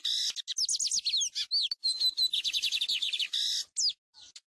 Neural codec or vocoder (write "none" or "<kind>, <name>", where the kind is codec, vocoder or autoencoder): none